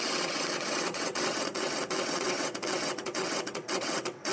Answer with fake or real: fake